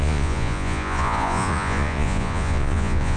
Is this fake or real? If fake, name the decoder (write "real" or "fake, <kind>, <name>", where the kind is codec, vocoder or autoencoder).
fake, vocoder, Vocos